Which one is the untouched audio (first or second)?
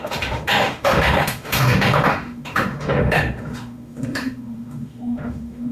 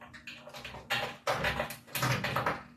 second